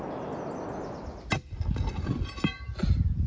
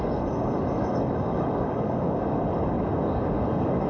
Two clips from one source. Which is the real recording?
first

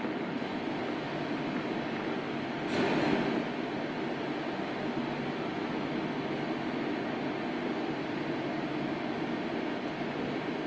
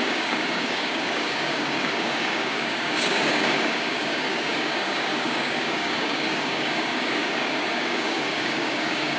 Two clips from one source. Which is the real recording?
first